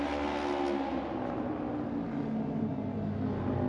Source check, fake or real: real